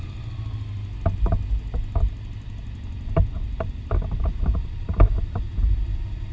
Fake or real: real